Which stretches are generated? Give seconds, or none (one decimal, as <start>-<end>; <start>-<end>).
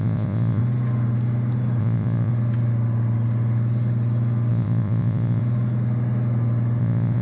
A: 0.0-0.6; 1.8-2.3; 4.5-5.4; 6.8-7.2